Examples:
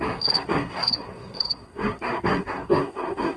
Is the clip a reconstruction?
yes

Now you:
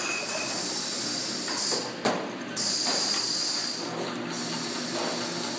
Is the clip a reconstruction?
no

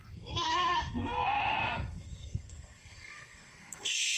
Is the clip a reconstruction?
yes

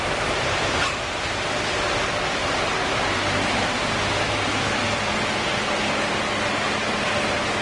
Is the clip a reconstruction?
no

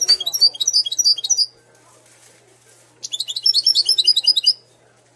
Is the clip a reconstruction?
no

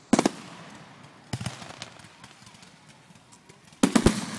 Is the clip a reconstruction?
no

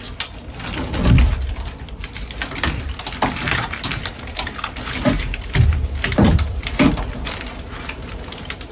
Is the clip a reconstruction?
no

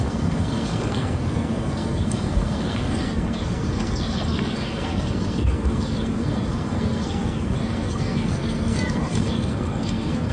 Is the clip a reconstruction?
yes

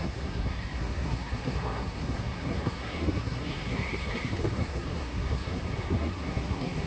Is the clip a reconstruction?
yes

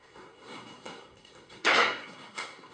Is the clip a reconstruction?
yes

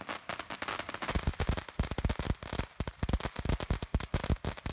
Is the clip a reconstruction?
no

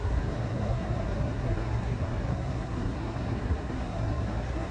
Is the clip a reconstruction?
yes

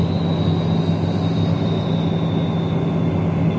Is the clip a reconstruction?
no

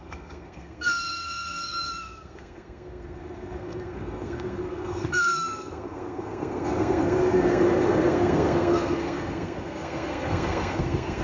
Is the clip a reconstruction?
yes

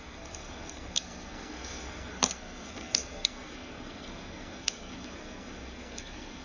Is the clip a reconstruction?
yes